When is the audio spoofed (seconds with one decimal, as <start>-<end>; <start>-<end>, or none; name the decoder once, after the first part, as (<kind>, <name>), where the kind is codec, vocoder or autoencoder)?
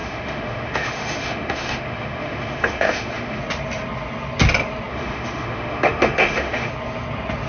0.0-3.4 (autoencoder, DAC-VAE); 4.9-6.7